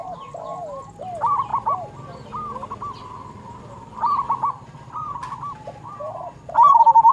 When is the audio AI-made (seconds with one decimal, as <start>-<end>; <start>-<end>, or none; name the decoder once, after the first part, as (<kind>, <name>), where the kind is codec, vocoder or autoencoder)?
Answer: none